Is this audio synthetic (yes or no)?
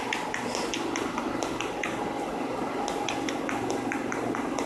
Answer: no